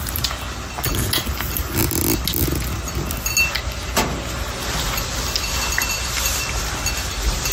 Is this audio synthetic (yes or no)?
no